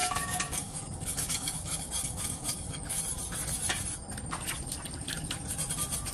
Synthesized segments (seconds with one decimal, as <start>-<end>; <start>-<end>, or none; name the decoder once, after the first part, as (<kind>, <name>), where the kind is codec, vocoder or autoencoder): 0.0-3.0 (codec, DAC)